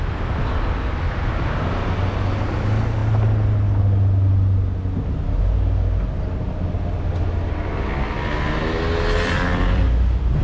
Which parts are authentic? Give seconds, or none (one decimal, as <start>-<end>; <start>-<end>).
0.0-9.5